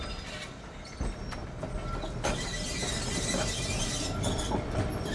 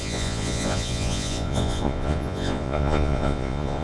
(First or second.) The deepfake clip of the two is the second